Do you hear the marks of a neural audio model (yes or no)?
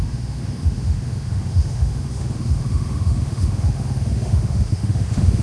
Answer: yes